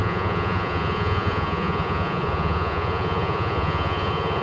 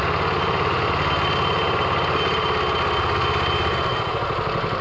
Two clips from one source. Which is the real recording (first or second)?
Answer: second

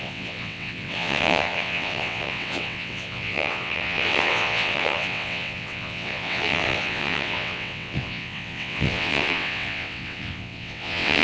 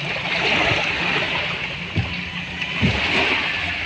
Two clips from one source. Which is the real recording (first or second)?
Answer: second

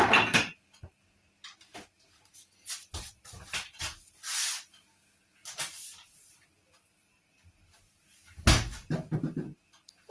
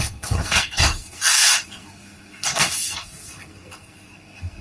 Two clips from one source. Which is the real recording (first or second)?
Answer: first